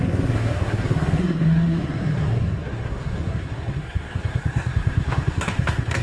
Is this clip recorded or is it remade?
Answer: remade